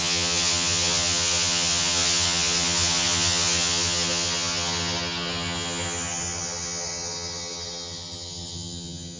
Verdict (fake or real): fake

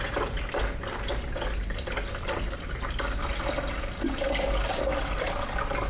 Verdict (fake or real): real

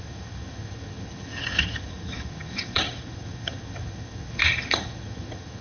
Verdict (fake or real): fake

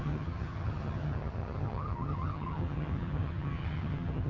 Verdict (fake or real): fake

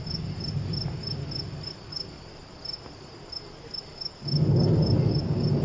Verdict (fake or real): real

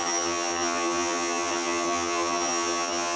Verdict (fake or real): fake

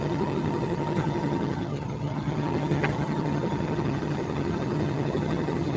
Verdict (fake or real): fake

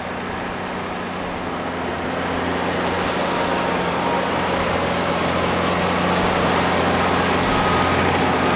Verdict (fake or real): real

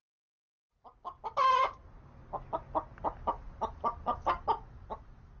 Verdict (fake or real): real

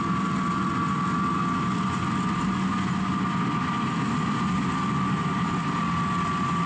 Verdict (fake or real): real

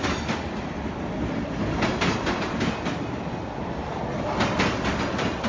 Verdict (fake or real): real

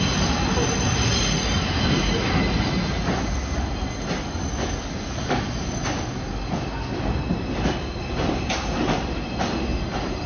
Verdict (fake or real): real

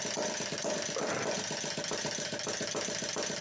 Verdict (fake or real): real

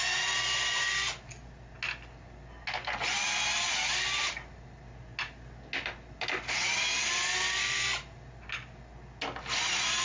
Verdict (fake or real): real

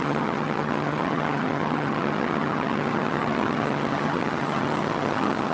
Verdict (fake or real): fake